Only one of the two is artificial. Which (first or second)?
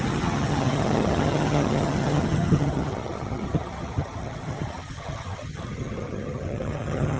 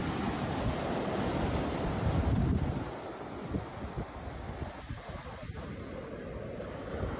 first